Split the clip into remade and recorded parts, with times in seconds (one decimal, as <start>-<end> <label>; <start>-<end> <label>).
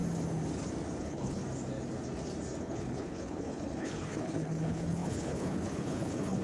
0.0-1.0 recorded; 1.0-1.4 remade; 1.4-2.6 recorded; 2.6-6.4 remade